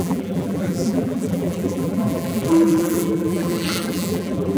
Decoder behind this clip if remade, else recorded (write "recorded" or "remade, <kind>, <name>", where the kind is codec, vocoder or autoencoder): remade, vocoder, BigVGAN v2